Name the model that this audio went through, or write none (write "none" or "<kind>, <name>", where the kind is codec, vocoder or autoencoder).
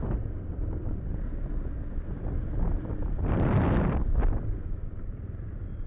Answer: none